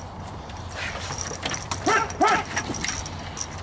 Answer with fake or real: real